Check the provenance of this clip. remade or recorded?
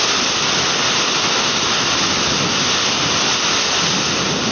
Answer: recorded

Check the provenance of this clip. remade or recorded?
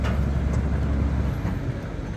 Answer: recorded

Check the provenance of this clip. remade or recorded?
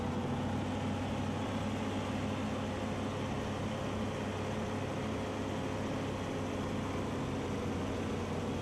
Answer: recorded